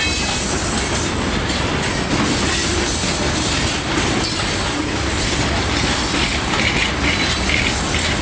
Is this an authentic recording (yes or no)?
yes